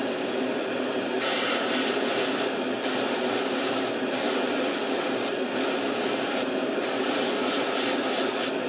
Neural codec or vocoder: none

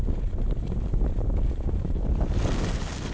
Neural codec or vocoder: none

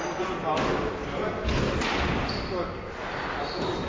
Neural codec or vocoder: none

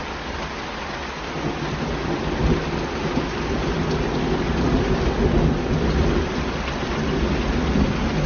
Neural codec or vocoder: none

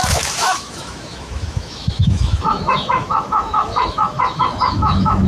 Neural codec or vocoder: autoencoder, DAC-VAE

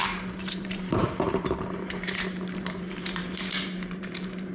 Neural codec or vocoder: vocoder, BigVGAN v2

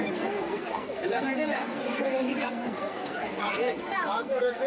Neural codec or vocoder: codec, SNAC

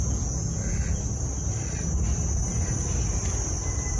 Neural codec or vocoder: none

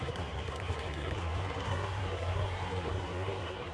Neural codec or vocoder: codec, SNAC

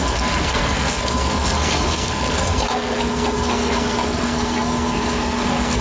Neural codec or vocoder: codec, SNAC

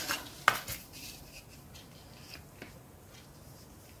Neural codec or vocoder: none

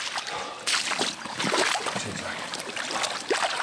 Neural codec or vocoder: none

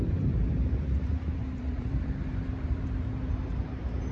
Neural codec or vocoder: vocoder, BigVGAN v2